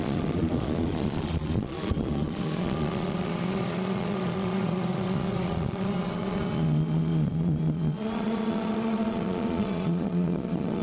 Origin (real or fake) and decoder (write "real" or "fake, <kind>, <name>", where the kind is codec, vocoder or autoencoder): fake, vocoder, Vocos